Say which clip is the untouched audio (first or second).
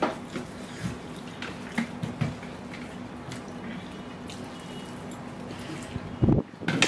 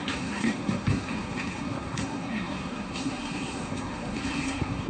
first